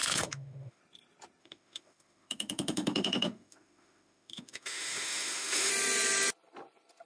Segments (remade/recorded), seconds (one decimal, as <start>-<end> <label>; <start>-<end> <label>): 0.0-0.8 remade; 0.8-1.4 recorded; 1.4-5.7 remade; 5.7-7.1 recorded